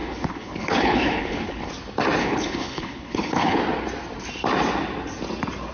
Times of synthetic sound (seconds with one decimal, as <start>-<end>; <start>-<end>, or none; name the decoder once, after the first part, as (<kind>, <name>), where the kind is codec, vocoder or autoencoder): 0.0-1.7 (codec, HILCodec); 2.2-3.6